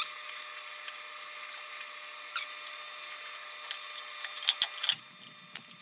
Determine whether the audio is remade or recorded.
recorded